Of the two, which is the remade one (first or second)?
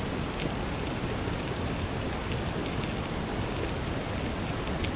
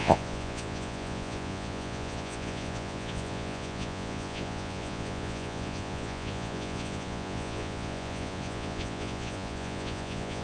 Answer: second